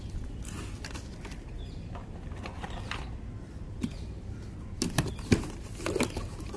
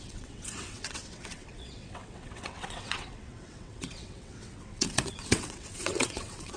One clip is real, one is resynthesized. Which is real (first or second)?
first